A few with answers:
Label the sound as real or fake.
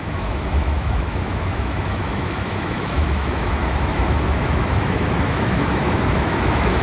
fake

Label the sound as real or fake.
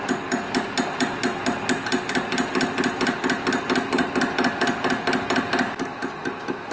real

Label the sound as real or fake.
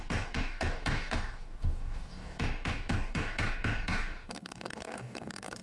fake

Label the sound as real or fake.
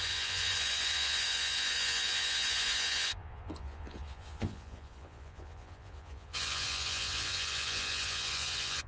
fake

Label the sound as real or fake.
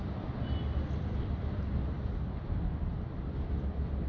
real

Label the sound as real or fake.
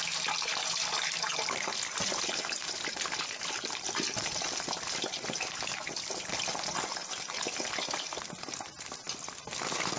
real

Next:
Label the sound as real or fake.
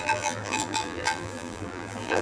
fake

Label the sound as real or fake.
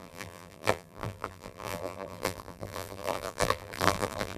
fake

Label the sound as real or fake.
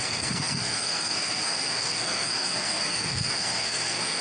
fake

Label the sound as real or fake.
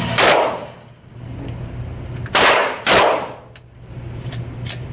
real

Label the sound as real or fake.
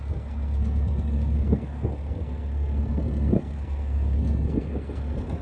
fake